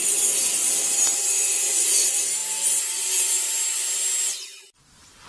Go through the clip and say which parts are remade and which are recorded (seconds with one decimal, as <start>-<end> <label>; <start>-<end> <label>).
0.0-5.3 recorded